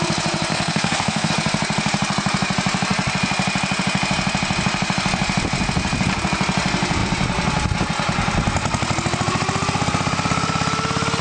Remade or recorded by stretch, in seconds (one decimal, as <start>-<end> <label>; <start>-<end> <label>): 0.0-0.5 recorded; 0.5-1.3 remade; 1.3-11.2 recorded